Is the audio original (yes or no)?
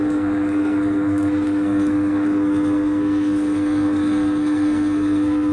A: no